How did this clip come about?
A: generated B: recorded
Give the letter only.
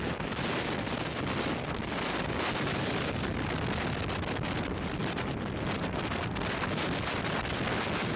B